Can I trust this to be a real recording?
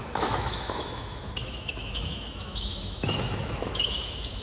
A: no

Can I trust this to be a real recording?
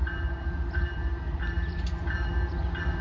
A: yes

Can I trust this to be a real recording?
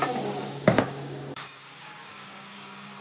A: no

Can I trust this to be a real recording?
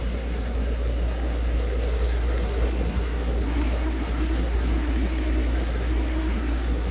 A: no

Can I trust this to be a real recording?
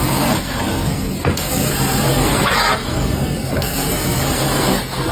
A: no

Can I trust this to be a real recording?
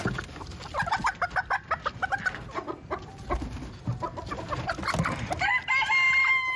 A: yes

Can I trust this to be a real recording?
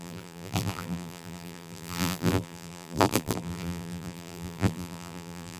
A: no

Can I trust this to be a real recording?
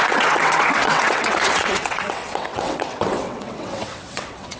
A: no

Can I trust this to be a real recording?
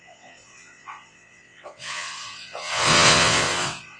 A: no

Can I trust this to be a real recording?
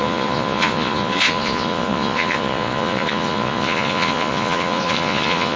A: no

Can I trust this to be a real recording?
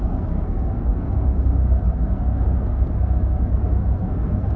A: no